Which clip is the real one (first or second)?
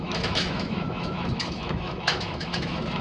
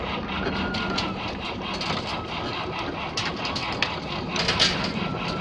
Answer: second